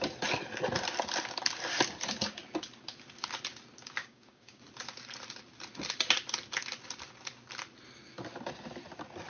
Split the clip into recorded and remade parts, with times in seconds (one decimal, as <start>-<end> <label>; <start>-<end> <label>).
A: 0.0-4.0 recorded; 4.0-4.6 remade; 4.6-9.3 recorded